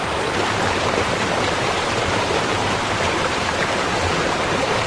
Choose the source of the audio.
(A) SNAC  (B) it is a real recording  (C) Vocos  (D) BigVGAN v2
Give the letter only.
D